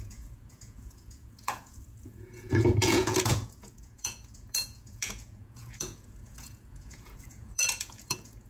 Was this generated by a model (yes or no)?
yes